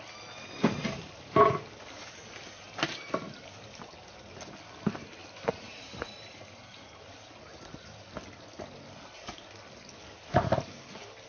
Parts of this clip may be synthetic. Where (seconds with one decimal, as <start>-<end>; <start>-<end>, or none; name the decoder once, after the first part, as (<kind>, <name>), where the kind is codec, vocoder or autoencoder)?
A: 0.6-1.4 (vocoder, BigVGAN v2); 5.2-7.3